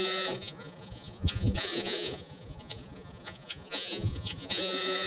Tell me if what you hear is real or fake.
fake